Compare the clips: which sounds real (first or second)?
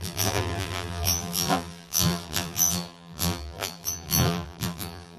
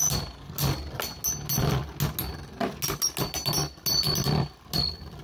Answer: second